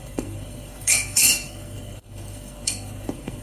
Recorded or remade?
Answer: remade